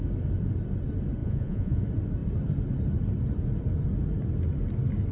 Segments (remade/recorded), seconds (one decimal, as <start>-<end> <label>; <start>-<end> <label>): 0.0-1.2 recorded; 1.2-1.8 remade; 1.8-5.1 recorded